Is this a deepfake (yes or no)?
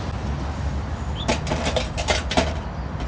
no